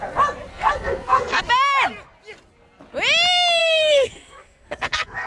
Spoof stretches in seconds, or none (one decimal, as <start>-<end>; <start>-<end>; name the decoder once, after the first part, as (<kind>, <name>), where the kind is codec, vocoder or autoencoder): 0.5-1.4 (codec, SNAC); 3.6-5.3